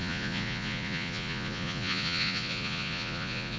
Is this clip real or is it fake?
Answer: fake